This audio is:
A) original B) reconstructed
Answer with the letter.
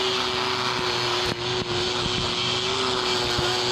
A